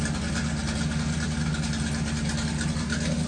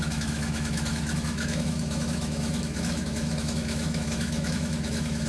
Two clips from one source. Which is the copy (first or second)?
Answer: second